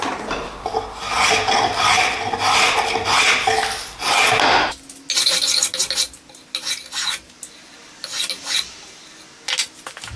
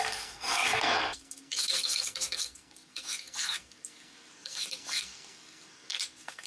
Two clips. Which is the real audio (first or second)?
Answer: first